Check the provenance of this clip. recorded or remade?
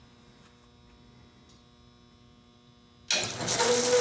recorded